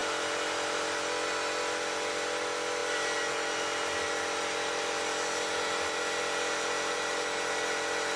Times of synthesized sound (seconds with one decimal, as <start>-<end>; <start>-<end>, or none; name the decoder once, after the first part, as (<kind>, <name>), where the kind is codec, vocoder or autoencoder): none